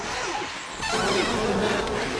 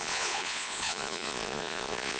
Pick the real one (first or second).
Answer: first